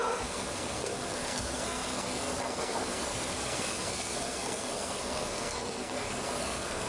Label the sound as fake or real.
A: fake